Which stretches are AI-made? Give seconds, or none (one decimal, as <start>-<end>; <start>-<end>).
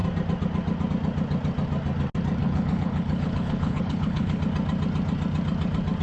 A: 2.4-4.4